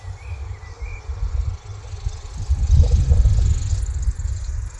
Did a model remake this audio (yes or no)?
no